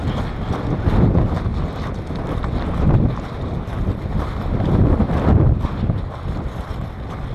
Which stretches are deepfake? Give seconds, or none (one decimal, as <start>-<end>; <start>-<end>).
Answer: none